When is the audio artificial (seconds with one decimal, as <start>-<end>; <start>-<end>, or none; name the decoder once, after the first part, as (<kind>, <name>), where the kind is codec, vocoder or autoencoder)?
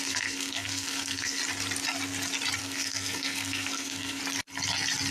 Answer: 0.0-1.4 (codec, SNAC); 2.6-4.2